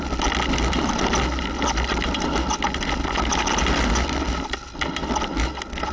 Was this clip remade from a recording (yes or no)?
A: no